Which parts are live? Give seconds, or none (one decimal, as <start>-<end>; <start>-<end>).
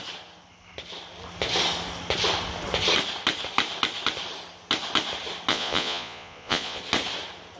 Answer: 0.0-5.5; 6.8-7.6